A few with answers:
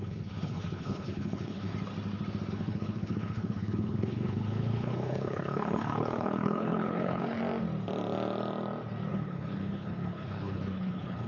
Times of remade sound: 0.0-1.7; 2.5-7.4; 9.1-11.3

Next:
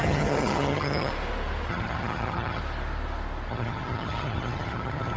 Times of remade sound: 0.0-1.1; 1.7-2.6; 3.5-5.2

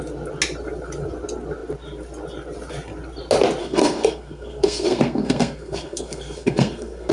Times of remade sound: 3.6-7.1

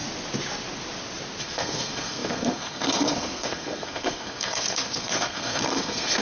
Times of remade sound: 1.4-6.2

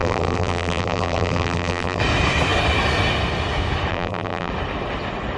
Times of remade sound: 0.0-2.0; 3.9-4.5

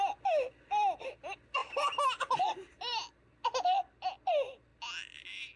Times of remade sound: none

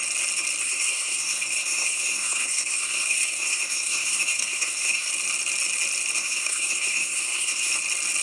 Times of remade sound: 0.6-5.1; 6.2-7.7

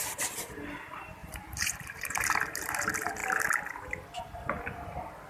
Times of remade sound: 1.2-2.8